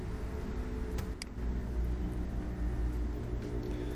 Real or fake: real